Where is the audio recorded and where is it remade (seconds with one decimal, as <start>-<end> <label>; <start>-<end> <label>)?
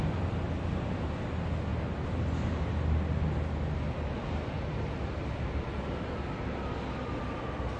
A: 0.0-7.8 recorded